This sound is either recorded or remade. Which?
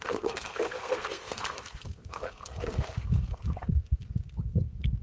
remade